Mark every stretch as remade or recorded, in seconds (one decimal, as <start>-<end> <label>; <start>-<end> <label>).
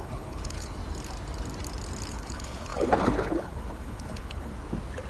0.0-0.8 remade; 0.8-2.1 recorded; 2.1-4.5 remade; 4.5-5.1 recorded